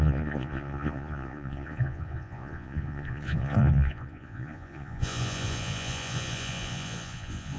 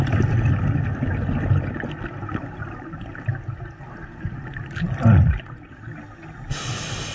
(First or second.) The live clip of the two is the second